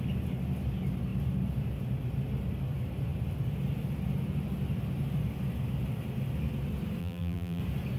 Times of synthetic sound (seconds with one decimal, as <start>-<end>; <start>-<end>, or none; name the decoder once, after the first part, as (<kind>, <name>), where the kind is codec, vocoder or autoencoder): 7.0-7.6 (vocoder, BigVGAN v2)